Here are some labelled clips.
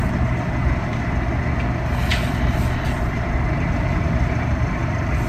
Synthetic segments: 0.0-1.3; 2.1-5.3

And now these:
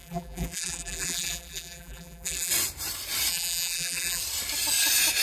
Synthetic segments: 0.0-2.5; 3.3-4.2

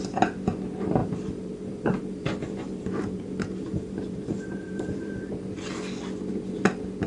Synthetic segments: 1.0-5.3

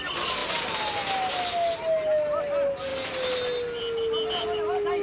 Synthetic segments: 0.4-1.0

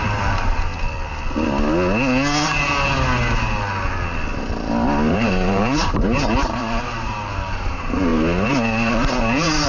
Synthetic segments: 0.0-0.7; 5.1-9.7

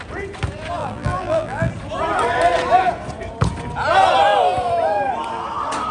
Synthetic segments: 0.8-1.7

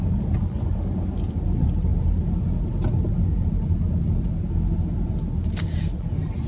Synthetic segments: none